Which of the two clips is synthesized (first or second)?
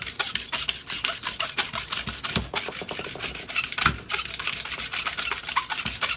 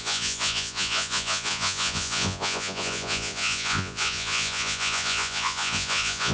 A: second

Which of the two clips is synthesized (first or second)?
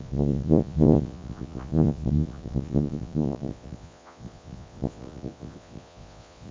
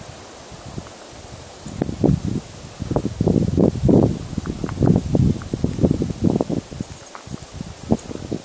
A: first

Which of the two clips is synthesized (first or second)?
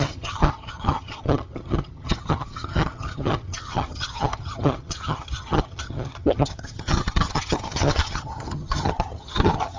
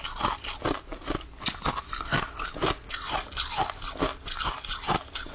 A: first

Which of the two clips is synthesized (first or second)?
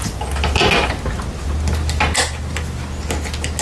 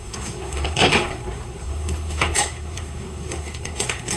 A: second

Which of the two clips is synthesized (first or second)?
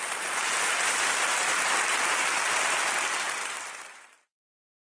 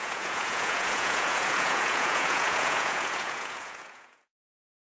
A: second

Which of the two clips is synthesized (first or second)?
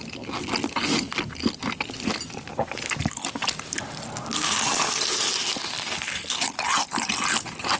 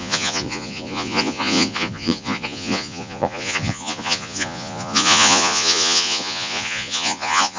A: second